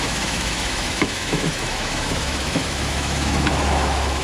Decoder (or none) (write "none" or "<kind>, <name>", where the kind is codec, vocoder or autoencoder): autoencoder, DAC-VAE